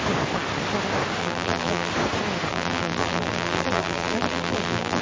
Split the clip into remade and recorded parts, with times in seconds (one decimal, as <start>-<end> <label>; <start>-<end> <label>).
0.0-1.2 recorded; 1.2-1.9 remade; 1.9-2.5 recorded; 2.5-5.0 remade